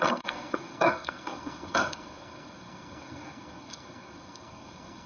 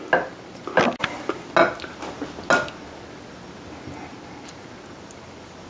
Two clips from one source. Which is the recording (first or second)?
second